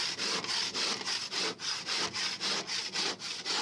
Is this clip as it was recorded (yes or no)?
yes